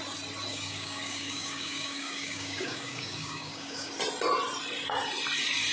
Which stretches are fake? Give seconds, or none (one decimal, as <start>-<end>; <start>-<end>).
0.5-3.9